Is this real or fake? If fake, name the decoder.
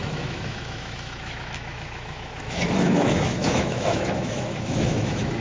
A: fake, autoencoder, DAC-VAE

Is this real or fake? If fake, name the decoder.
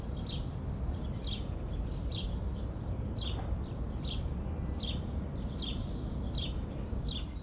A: real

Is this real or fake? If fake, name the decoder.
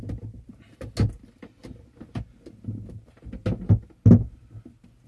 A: real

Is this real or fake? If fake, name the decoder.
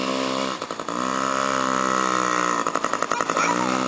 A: real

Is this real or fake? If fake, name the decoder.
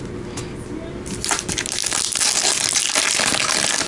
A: real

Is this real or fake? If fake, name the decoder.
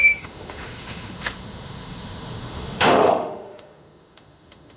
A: fake, autoencoder, DAC-VAE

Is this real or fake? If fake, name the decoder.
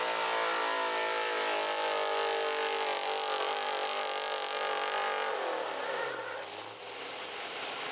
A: real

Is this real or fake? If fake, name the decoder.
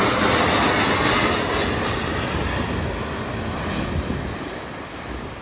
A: real